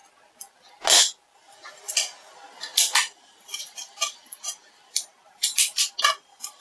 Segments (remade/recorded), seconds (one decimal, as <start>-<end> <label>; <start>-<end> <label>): 0.0-1.7 recorded; 1.7-2.7 remade; 2.7-3.6 recorded; 3.6-6.6 remade